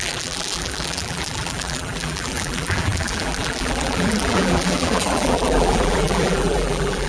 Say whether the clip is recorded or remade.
remade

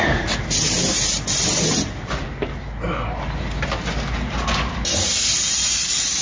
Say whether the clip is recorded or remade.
recorded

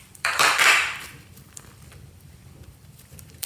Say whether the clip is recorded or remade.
remade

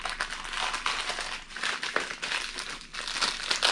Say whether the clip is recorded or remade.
recorded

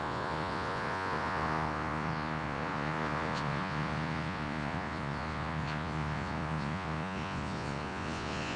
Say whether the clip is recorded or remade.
remade